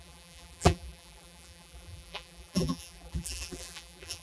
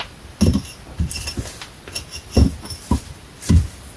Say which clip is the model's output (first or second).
first